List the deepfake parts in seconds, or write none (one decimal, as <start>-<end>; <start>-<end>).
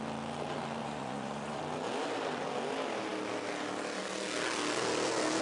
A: 0.8-1.6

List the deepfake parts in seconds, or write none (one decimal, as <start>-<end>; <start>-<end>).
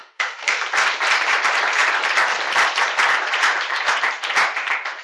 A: 0.0-0.6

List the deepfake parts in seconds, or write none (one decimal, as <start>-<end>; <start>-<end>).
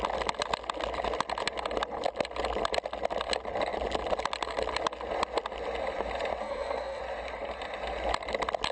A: 6.4-7.0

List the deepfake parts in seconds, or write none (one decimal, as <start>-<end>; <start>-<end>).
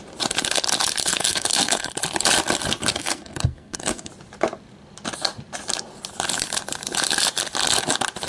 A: 1.0-1.9; 2.9-4.1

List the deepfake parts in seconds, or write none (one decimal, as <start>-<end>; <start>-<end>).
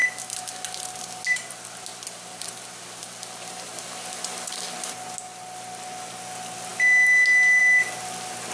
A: none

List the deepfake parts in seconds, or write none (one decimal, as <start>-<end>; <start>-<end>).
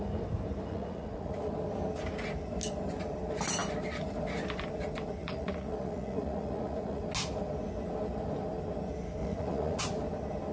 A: 0.7-1.5; 5.2-7.0; 9.2-9.8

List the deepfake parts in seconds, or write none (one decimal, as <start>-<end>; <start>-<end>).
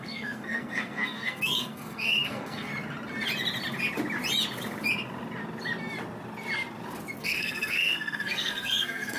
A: 0.0-2.7; 7.2-9.2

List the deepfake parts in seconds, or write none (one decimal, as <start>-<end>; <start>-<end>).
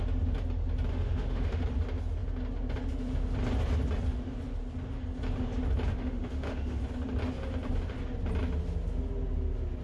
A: 0.9-1.6; 5.9-6.8